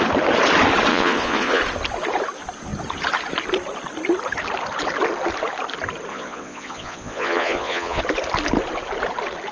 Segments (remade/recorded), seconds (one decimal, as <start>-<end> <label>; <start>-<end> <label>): 0.0-0.9 recorded; 0.9-1.6 remade; 1.6-6.1 recorded; 6.1-8.0 remade; 8.0-9.5 recorded